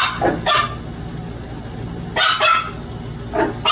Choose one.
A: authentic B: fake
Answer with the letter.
A